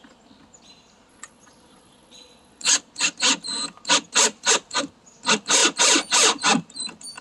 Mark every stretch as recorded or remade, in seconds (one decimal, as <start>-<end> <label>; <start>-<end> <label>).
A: 0.0-1.1 recorded; 1.1-2.7 remade; 2.7-7.2 recorded